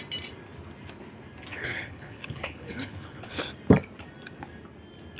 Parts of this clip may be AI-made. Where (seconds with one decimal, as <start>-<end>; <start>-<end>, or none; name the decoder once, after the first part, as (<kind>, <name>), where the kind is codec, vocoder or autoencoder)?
1.5-3.4 (codec, HILCodec)